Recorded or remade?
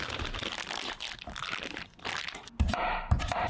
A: recorded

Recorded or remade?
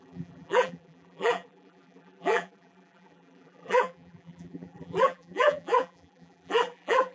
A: remade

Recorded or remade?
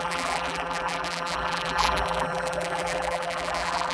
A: remade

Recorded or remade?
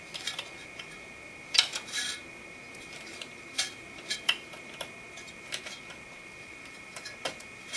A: remade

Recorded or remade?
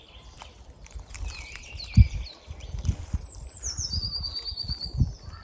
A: remade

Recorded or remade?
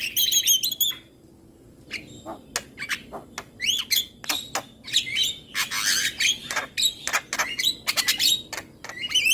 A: recorded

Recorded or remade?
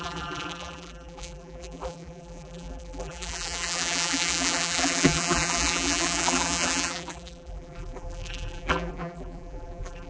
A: remade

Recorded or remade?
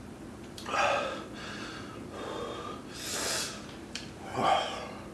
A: remade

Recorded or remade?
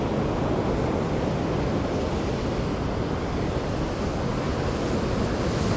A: recorded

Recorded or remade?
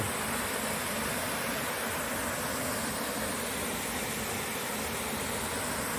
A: recorded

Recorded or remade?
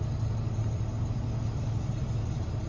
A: recorded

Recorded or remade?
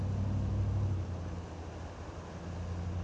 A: recorded